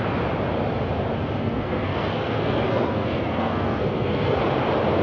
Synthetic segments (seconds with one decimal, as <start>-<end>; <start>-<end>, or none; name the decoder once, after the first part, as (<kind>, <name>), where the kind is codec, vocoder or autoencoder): 1.4-4.4 (codec, SNAC)